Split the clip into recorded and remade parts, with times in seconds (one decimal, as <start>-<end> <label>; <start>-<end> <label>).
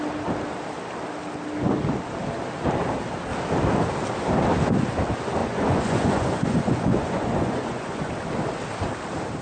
0.0-5.4 recorded; 5.4-8.1 remade; 8.1-9.4 recorded